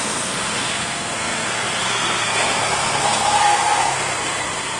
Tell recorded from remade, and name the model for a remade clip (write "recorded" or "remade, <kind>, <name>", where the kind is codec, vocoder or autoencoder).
remade, codec, SNAC